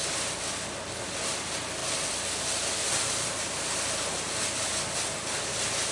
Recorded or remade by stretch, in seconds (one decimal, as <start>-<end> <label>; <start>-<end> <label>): 0.0-5.9 recorded